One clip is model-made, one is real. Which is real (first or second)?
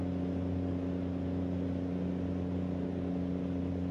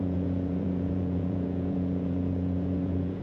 first